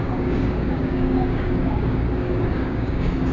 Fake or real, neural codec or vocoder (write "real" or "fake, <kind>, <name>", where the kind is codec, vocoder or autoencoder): fake, codec, DAC